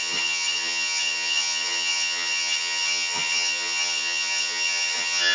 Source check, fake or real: fake